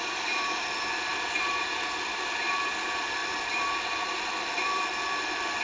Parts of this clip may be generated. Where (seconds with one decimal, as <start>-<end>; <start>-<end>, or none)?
0.0-5.6